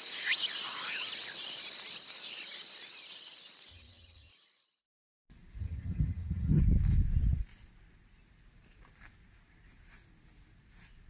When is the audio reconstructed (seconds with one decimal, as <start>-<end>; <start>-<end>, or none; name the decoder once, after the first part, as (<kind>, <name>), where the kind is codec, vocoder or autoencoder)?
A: 3.7-4.3 (vocoder, HiFi-GAN); 5.6-6.6